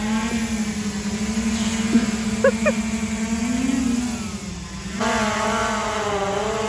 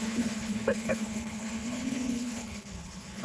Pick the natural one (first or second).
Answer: first